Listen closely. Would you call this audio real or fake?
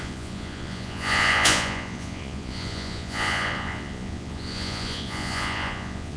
fake